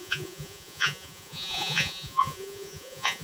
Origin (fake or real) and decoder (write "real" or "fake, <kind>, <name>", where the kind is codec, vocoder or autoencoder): fake, vocoder, Vocos